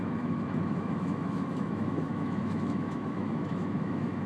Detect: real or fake fake